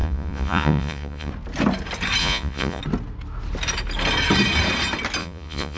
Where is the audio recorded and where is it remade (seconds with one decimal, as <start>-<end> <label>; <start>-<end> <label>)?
0.0-1.3 remade; 1.3-2.2 recorded; 2.2-2.8 remade; 2.8-5.2 recorded; 5.2-5.8 remade